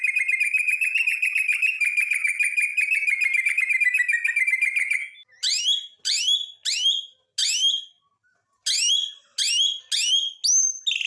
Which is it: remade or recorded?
recorded